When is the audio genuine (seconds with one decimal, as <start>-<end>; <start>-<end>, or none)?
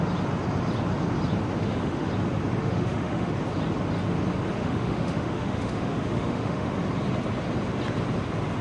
0.0-1.6; 2.1-2.6; 3.3-4.6; 6.7-8.6